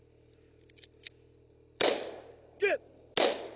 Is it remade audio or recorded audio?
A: recorded